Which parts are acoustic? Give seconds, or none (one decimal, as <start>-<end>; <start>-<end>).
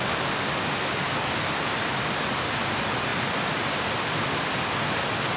0.0-5.4